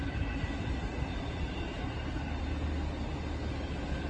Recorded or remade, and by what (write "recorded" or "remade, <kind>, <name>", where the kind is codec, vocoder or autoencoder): recorded